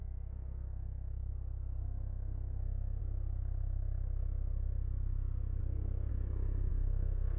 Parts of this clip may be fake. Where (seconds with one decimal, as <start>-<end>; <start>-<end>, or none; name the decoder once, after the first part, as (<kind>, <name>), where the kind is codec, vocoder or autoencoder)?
0.0-1.3 (codec, SNAC); 1.8-3.0; 5.6-6.1; 6.7-7.4